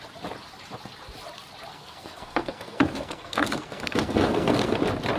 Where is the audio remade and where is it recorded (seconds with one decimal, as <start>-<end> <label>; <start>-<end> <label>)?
0.0-1.7 recorded; 1.7-4.8 remade; 4.8-5.2 recorded